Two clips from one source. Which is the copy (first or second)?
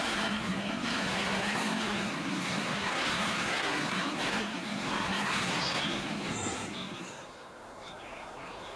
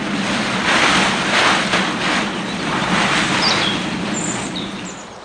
first